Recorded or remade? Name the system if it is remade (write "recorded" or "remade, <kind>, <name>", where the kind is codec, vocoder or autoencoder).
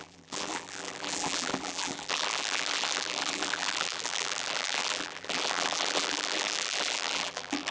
remade, vocoder, BigVGAN v2